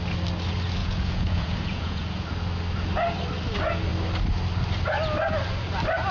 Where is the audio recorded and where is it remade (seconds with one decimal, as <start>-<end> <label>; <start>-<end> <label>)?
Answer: 0.0-0.8 recorded; 0.8-2.3 remade; 2.3-6.1 recorded